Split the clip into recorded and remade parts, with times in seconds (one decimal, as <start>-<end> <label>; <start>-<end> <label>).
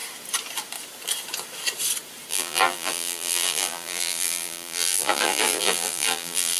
0.0-2.3 recorded; 2.3-6.6 remade